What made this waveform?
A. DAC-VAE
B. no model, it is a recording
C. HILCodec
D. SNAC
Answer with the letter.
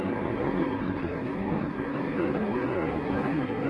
D